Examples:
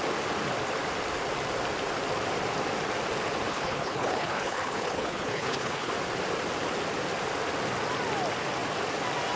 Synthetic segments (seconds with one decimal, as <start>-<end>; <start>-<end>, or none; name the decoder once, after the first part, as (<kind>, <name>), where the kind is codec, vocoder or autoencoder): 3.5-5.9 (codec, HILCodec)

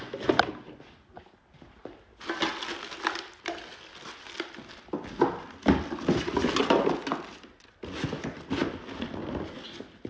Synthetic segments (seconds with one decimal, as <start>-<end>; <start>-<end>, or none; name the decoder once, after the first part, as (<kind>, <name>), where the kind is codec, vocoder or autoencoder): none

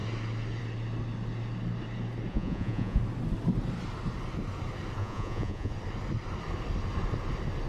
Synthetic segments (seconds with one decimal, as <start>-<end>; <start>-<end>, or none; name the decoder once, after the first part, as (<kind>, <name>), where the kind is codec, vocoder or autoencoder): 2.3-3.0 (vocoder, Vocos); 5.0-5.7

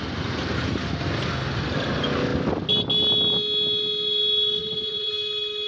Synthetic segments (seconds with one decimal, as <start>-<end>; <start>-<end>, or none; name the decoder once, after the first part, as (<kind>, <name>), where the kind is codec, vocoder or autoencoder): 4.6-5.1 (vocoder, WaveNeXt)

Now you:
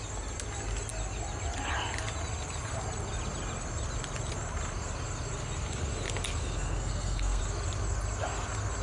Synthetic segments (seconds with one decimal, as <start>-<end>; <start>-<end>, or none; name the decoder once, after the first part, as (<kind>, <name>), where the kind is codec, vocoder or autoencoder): 6.4-7.4 (codec, SNAC)

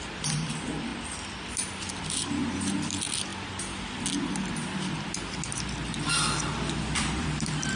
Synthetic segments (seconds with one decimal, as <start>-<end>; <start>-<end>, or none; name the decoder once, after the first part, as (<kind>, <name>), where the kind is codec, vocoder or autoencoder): 0.0-0.9 (vocoder, BigVGAN v2); 1.5-3.3; 6.7-7.8